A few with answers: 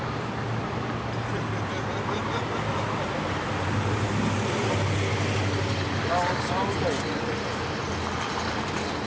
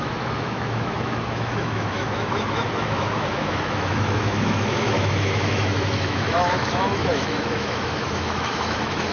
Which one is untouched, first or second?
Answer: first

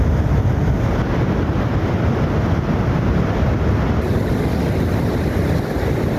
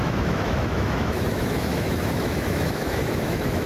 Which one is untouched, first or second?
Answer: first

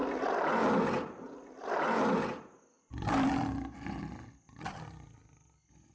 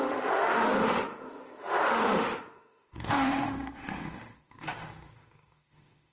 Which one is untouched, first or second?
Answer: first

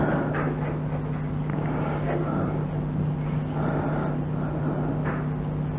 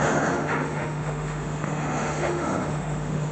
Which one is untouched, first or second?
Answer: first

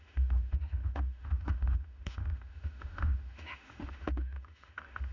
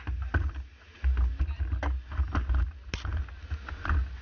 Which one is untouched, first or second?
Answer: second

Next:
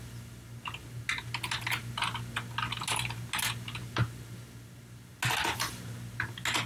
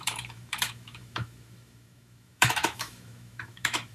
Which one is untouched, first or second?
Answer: first